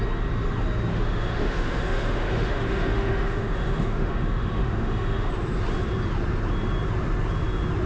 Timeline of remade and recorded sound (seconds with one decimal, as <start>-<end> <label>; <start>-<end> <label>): 0.0-0.9 recorded; 0.9-5.3 remade; 5.3-7.9 recorded